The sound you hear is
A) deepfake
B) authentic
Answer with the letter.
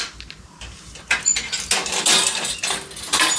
B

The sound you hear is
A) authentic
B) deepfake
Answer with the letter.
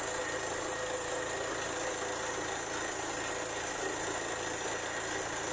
A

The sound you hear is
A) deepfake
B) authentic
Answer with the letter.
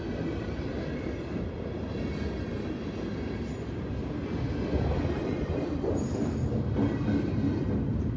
B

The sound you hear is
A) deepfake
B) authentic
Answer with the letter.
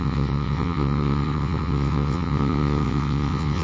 A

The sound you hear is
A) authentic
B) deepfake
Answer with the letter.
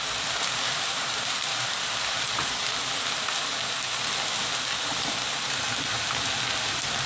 A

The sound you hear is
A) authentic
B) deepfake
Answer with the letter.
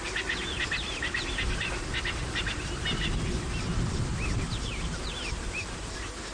A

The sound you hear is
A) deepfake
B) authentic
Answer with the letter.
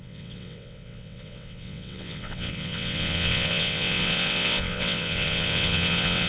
A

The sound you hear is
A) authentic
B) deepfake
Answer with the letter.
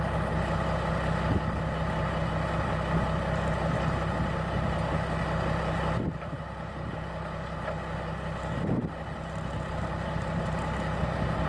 A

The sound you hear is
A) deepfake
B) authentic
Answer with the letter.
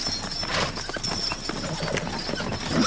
B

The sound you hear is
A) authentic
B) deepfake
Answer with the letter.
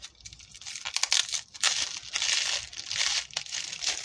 A